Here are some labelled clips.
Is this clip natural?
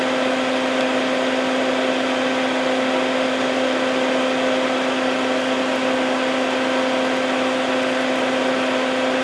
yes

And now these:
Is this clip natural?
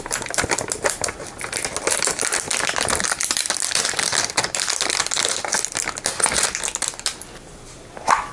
yes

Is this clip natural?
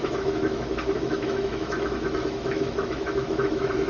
no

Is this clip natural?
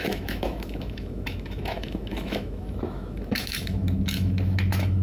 no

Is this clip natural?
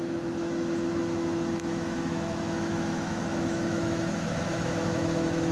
no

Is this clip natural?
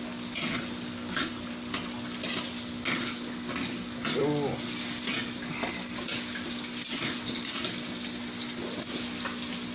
yes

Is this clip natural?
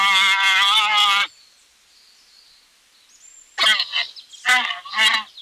yes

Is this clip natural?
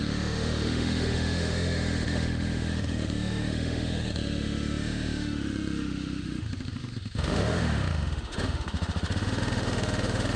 no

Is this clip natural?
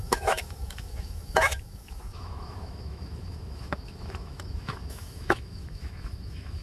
no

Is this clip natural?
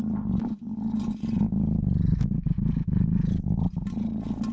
yes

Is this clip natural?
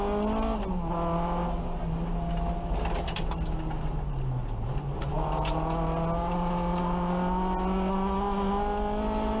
yes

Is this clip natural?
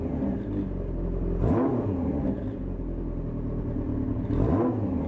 yes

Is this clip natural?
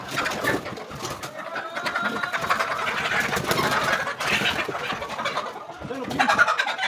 yes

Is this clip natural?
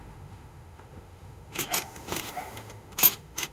no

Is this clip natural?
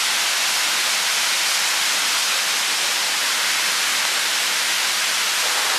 yes